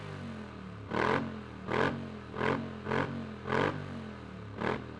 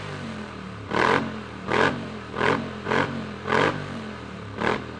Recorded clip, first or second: first